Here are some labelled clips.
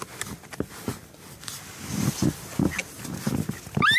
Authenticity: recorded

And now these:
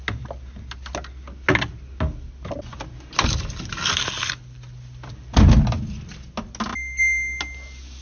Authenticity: recorded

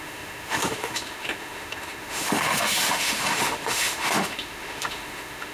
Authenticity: remade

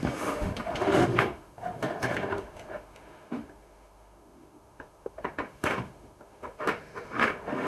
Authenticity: remade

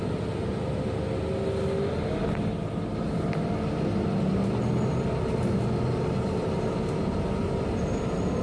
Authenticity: recorded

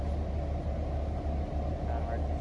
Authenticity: recorded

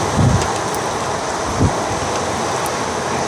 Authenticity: recorded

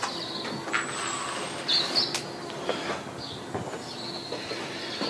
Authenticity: recorded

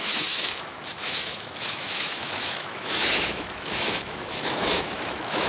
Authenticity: remade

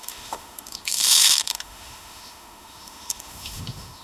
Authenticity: remade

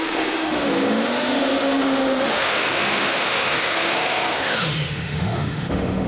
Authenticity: remade